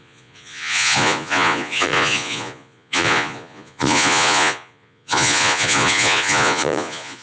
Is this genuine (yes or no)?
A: no